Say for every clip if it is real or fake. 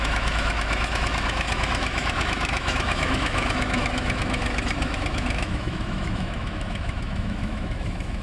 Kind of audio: fake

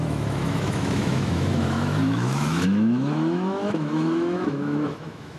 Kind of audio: fake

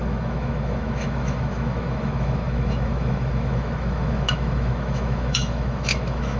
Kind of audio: fake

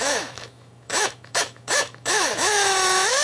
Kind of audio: fake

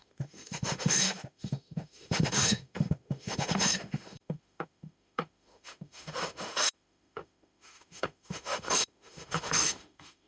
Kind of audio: fake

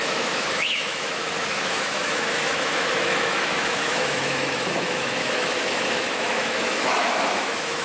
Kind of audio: fake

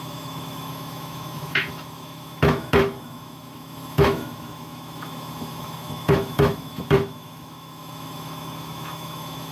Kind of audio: fake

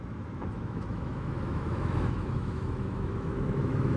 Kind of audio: fake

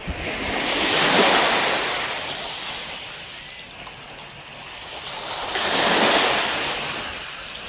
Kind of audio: real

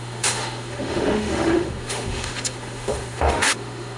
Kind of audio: fake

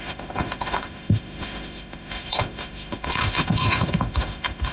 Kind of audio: fake